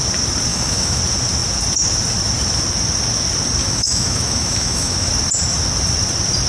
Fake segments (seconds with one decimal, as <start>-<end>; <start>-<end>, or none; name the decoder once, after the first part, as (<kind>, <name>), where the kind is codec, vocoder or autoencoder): 0.5-1.0 (autoencoder, DAC-VAE); 3.6-5.1